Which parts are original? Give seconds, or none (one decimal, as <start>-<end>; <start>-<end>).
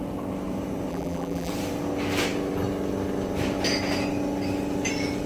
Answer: 0.0-0.9; 1.5-5.3